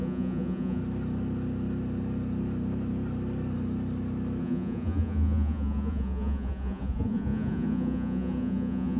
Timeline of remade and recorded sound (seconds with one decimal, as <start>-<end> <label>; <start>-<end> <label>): 0.0-0.8 remade; 0.8-4.4 recorded; 4.4-9.0 remade